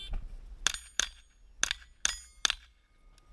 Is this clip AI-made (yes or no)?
no